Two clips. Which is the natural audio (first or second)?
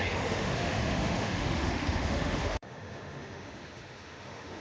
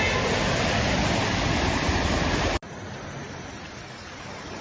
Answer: second